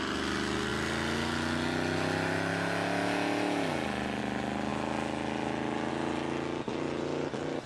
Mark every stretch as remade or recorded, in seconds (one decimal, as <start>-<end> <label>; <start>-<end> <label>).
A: 0.0-7.7 recorded